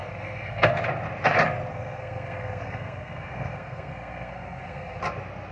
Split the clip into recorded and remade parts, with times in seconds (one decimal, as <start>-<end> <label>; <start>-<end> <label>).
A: 0.0-0.7 remade; 0.7-1.7 recorded; 1.7-5.0 remade; 5.0-5.5 recorded